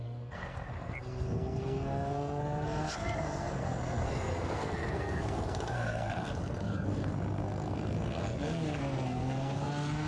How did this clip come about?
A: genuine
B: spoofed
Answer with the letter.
B